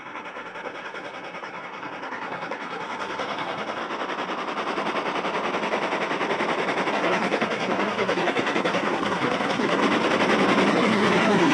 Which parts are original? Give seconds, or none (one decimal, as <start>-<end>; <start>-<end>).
3.8-6.9; 9.8-10.7